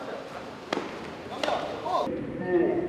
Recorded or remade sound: recorded